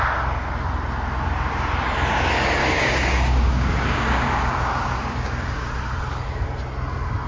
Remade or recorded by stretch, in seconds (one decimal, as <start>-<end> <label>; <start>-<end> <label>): 0.0-2.6 recorded; 2.6-5.7 remade; 5.7-7.3 recorded